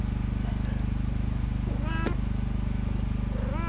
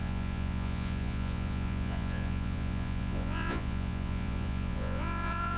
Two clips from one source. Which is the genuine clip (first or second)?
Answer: first